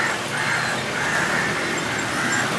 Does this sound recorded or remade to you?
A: recorded